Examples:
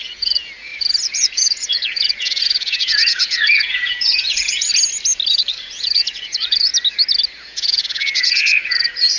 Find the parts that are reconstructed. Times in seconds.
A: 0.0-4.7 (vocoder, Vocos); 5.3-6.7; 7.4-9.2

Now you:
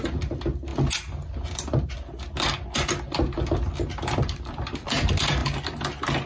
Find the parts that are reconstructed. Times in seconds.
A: none

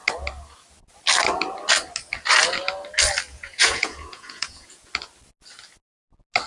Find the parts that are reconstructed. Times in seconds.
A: 3.3-4.9 (vocoder, Vocos)

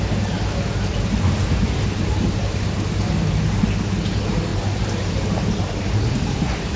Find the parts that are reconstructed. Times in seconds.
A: 0.9-3.6 (vocoder, BigVGAN v2); 4.5-6.8

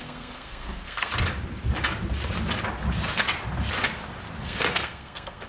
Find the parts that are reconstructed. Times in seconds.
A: 0.0-1.1 (codec, SNAC); 4.4-5.5

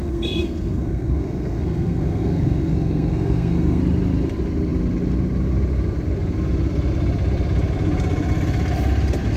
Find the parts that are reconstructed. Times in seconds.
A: 0.0-3.8 (codec, SNAC)

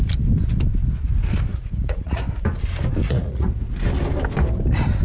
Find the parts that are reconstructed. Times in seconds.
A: 1.5-2.2 (vocoder, Vocos); 3.0-3.5

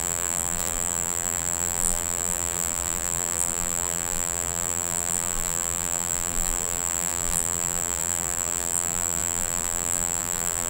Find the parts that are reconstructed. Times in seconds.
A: 0.0-10.7 (vocoder, BigVGAN v2)